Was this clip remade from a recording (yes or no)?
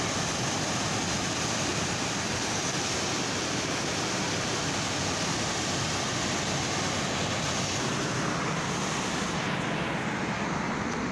no